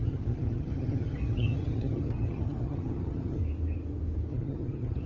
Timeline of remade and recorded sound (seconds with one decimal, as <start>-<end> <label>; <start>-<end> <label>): 0.0-3.4 remade; 3.4-4.3 recorded; 4.3-5.1 remade